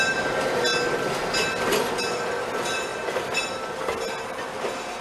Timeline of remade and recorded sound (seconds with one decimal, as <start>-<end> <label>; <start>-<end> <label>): 0.0-2.9 recorded; 2.9-3.5 remade; 3.5-5.0 recorded